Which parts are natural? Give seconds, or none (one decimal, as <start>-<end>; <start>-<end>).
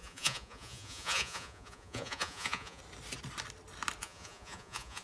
2.8-4.0